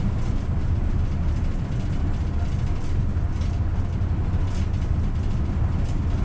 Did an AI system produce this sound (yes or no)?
no